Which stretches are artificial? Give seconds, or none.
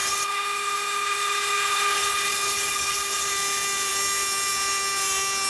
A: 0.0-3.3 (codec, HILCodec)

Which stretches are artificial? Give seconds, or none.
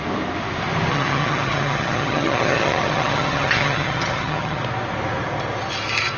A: 0.9-4.6 (vocoder, HiFi-GAN)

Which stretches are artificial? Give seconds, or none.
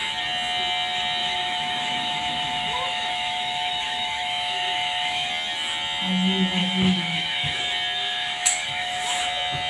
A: 1.2-5.3 (autoencoder, DAC-VAE); 6.6-7.6; 8.0-9.2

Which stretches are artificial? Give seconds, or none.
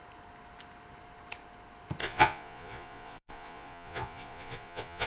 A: 2.0-5.1 (vocoder, Vocos)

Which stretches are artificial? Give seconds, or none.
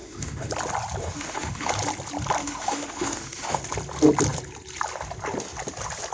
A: 0.0-0.5 (autoencoder, DAC-VAE); 1.0-1.7; 2.4-3.6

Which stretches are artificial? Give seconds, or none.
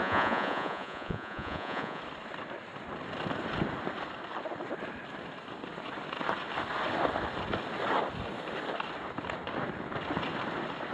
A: 0.0-2.0 (vocoder, Vocos)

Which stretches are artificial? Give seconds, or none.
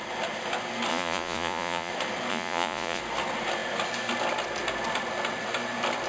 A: 0.9-1.9 (vocoder, Vocos); 2.3-3.0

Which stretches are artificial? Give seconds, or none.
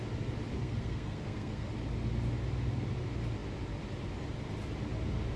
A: 0.6-1.7 (codec, SNAC)